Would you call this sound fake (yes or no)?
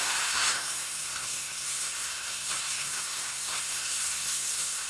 yes